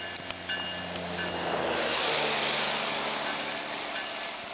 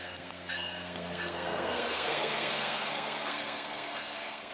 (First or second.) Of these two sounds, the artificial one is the second